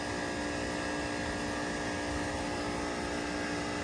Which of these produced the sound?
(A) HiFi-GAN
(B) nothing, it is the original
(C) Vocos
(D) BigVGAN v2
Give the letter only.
B